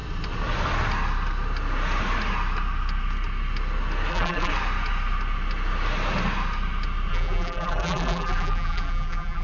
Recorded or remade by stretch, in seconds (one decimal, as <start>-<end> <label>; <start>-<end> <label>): 0.0-4.1 recorded; 4.1-4.5 remade; 4.5-7.1 recorded; 7.1-9.4 remade